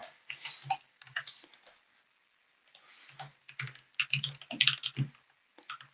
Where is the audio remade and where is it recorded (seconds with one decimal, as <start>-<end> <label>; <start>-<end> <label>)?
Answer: 0.0-0.5 remade; 0.5-0.9 recorded; 0.9-1.4 remade; 1.4-5.9 recorded